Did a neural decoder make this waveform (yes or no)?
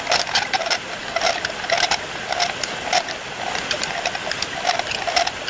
no